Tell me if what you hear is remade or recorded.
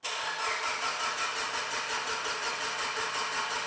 recorded